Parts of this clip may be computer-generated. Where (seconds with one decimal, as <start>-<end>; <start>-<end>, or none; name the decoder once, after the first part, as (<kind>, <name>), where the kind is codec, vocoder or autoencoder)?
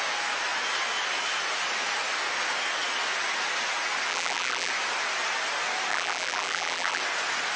4.1-4.7 (vocoder, BigVGAN v2); 5.9-7.0